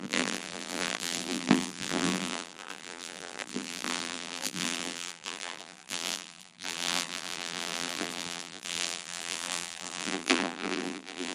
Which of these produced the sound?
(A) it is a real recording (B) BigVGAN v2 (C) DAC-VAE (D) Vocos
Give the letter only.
B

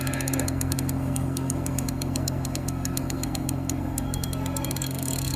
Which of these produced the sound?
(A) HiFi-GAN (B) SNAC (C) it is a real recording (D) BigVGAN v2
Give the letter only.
B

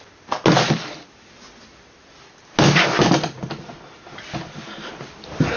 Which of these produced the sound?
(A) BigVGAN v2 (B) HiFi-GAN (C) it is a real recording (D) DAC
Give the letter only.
C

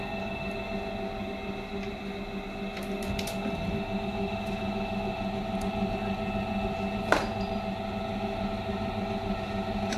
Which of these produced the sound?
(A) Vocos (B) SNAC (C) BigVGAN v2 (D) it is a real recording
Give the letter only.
D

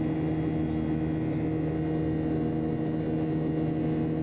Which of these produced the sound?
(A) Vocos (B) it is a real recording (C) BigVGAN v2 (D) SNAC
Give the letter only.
B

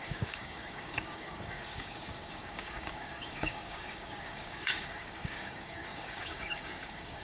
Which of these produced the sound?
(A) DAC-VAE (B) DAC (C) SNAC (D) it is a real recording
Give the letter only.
B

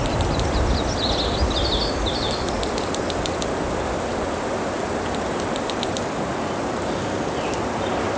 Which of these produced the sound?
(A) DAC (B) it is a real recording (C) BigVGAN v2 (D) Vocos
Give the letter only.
B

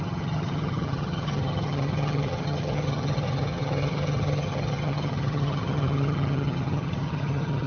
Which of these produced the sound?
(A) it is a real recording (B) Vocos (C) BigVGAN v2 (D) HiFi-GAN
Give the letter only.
D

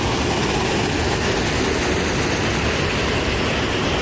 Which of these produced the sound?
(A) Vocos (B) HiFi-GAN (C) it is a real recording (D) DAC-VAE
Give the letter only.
C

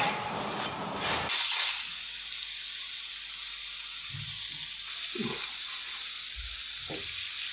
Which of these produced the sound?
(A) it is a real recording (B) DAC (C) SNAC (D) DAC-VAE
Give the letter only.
A